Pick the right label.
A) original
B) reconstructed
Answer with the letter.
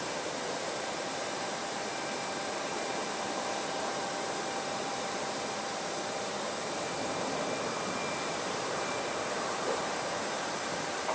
B